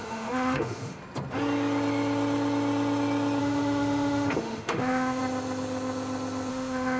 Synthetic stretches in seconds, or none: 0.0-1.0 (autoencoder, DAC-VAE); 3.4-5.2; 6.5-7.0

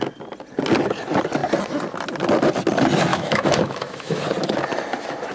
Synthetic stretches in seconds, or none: 3.1-4.2 (autoencoder, DAC-VAE)

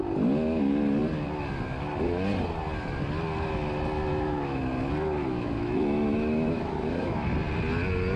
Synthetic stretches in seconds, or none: 4.1-4.6 (autoencoder, DAC-VAE); 5.2-7.3

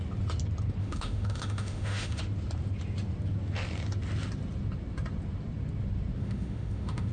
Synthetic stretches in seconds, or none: 0.8-2.2 (autoencoder, DAC-VAE); 6.2-7.1

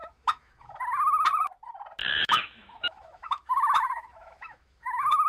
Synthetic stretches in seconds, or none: 0.0-0.8 (autoencoder, DAC-VAE); 2.0-5.3